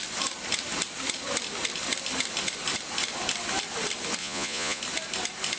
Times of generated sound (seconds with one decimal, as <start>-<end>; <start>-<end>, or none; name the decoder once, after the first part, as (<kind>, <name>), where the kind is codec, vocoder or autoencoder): 4.2-4.8 (vocoder, Vocos)